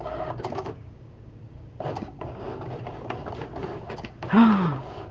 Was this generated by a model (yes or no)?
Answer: yes